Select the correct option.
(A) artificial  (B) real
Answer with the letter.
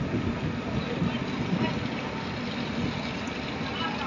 B